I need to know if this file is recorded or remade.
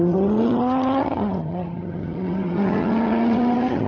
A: remade